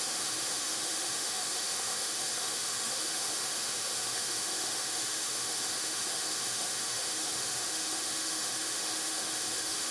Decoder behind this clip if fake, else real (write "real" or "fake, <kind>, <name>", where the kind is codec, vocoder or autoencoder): fake, autoencoder, DAC-VAE